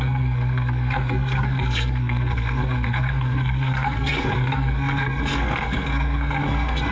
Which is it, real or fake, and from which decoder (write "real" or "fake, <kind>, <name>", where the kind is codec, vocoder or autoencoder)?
fake, codec, SNAC